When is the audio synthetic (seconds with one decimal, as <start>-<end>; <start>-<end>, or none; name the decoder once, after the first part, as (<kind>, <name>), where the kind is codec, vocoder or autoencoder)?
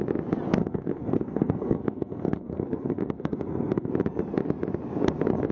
0.6-3.9 (codec, SNAC)